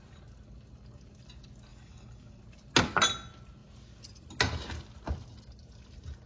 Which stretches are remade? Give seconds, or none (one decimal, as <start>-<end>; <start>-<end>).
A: 1.7-2.4